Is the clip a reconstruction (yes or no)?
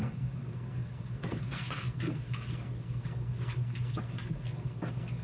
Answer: yes